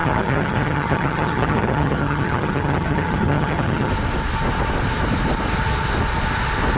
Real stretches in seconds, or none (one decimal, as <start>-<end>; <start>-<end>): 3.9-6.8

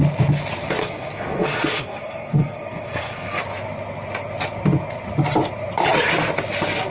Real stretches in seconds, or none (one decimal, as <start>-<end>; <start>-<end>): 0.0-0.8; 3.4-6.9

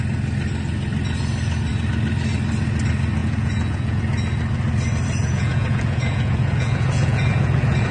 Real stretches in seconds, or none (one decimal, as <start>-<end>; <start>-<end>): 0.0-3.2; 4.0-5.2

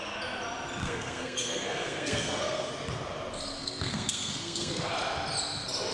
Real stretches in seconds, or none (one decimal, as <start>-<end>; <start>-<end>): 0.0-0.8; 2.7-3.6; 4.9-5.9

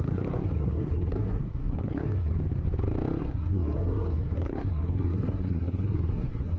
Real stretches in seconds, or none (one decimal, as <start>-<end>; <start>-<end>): 2.3-3.2

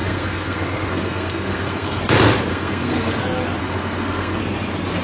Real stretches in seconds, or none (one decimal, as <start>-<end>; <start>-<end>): 2.0-2.5; 3.2-3.6; 4.4-5.0

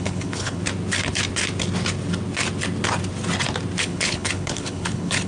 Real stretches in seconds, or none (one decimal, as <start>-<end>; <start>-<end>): 0.6-3.8

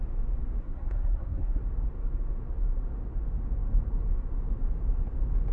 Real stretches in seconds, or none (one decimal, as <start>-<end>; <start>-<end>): 0.0-0.6; 1.6-5.5